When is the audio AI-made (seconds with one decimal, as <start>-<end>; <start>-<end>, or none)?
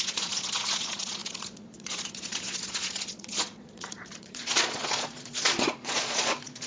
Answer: 0.0-6.7